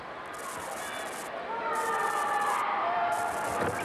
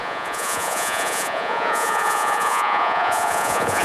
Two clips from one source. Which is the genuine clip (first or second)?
first